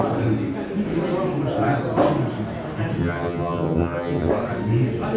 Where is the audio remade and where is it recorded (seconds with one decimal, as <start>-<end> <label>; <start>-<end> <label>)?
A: 0.0-3.0 recorded; 3.0-4.3 remade; 4.3-5.2 recorded